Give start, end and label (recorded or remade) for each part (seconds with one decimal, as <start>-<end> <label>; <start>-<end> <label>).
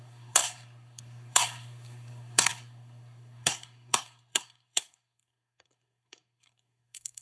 0.0-7.2 remade